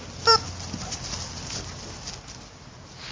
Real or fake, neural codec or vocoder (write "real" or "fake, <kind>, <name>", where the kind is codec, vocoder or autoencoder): real